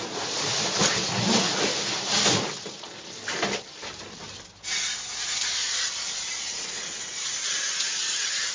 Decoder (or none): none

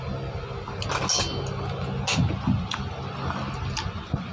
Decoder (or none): none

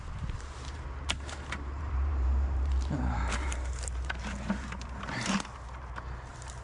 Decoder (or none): vocoder, BigVGAN v2